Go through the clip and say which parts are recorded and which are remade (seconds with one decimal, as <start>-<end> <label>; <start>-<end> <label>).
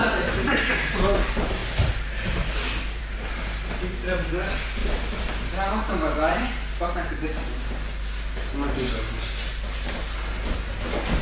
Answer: 0.0-11.2 recorded